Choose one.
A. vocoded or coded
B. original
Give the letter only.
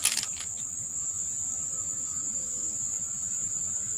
B